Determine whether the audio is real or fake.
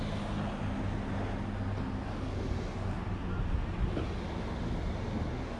real